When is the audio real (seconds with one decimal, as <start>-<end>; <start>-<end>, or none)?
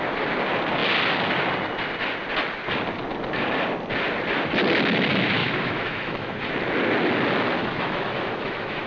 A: 0.0-5.4; 6.5-7.6